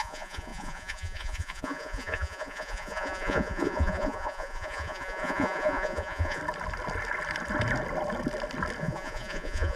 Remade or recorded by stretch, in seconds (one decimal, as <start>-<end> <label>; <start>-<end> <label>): 0.0-6.4 remade; 6.4-8.8 recorded; 8.8-9.8 remade